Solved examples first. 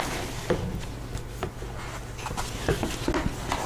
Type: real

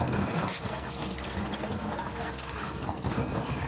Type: fake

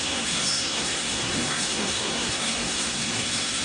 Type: fake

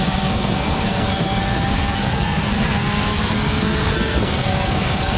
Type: fake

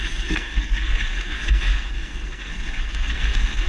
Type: fake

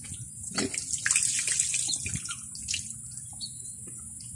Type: real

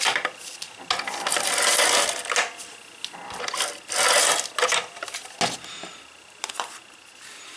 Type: real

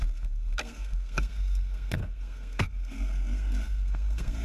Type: fake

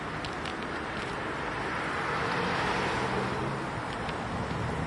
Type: real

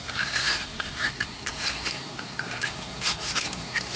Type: fake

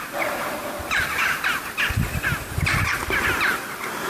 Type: real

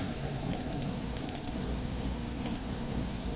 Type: fake